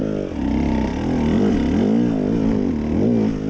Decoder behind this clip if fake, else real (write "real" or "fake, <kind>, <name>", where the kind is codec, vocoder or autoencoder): real